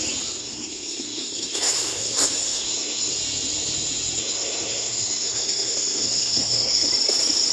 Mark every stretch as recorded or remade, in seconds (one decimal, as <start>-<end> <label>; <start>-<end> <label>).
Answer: 0.0-0.4 recorded; 0.4-3.1 remade; 3.1-4.2 recorded; 4.2-6.9 remade; 6.9-7.5 recorded